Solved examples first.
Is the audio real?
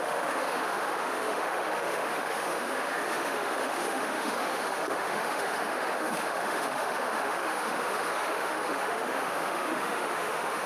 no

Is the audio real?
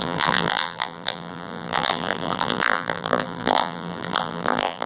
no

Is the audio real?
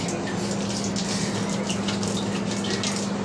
yes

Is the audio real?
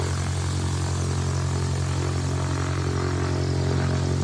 yes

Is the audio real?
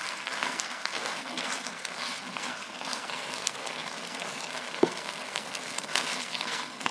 no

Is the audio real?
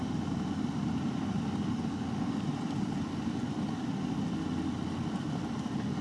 yes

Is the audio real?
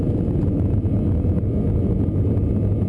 yes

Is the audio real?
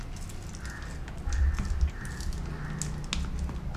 yes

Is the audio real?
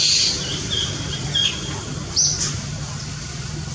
yes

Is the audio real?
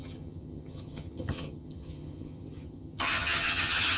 no